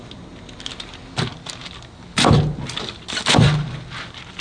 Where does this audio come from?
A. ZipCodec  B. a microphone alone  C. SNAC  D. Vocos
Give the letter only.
B